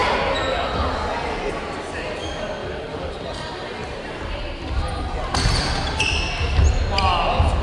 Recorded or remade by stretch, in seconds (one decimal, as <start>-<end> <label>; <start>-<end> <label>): 0.0-3.8 recorded; 3.8-4.6 remade; 4.6-7.6 recorded